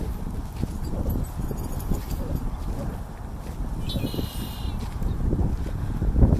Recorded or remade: recorded